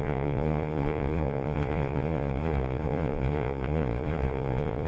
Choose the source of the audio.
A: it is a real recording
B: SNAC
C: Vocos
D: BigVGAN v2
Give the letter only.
C